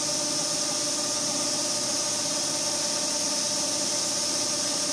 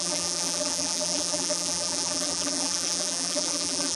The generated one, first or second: second